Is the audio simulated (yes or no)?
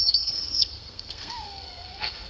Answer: yes